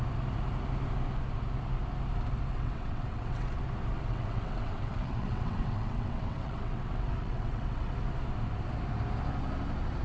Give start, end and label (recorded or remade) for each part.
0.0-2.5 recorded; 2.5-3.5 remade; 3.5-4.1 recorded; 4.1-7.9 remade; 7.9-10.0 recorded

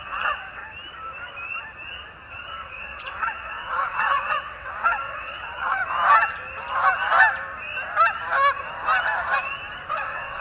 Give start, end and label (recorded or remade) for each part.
0.0-0.6 remade; 0.6-2.3 recorded; 2.3-5.8 remade; 5.8-9.9 recorded; 9.9-10.4 remade

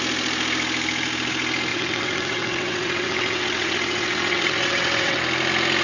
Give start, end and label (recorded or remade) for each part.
0.0-1.7 recorded; 1.7-5.2 remade; 5.2-5.8 recorded

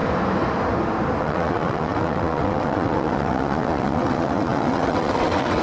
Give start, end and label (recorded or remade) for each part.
0.0-1.2 recorded; 1.2-5.6 remade

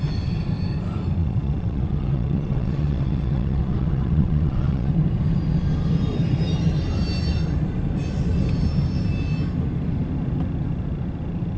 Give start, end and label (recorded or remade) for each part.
0.0-1.2 recorded; 1.2-4.9 remade; 4.9-11.6 recorded